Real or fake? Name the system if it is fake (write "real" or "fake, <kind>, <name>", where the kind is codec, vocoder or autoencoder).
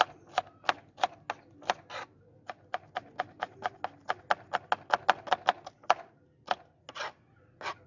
real